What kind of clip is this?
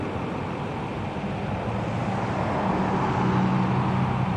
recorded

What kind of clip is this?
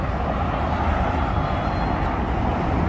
recorded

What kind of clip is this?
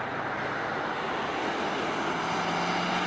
recorded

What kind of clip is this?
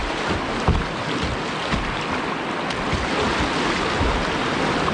recorded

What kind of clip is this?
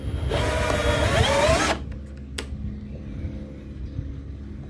recorded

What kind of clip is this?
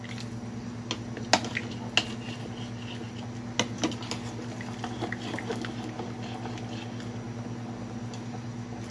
recorded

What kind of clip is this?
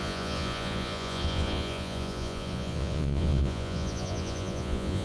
remade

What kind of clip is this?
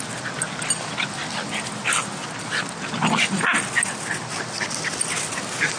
recorded